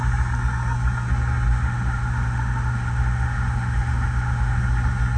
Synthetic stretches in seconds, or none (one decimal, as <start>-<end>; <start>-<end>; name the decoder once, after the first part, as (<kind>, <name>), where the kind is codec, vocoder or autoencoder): 1.5-4.6 (autoencoder, DAC-VAE)